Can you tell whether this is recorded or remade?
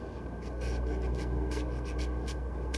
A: remade